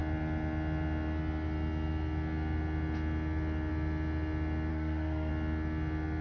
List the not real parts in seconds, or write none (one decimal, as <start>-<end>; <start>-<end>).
4.7-5.3